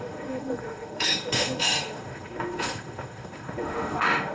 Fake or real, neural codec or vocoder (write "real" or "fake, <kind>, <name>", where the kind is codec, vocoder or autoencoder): fake, autoencoder, DAC-VAE